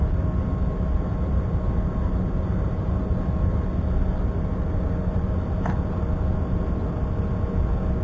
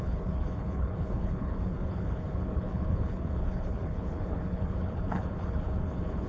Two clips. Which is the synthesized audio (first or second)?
second